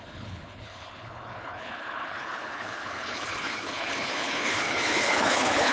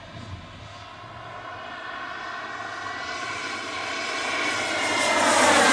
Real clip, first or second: second